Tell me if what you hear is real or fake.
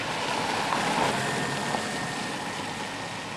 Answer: real